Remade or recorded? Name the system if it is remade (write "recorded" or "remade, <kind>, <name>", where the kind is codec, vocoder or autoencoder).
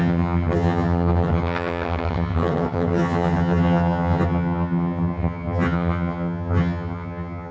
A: remade, vocoder, HiFi-GAN